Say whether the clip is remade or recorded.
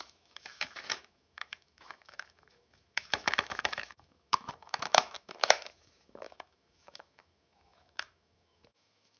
remade